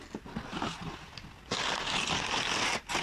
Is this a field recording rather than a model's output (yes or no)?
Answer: yes